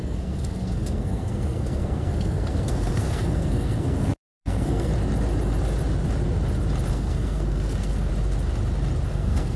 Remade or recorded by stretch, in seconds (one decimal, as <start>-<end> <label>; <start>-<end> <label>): 0.0-4.9 remade; 4.9-6.9 recorded; 6.9-8.1 remade; 8.1-9.1 recorded; 9.1-9.6 remade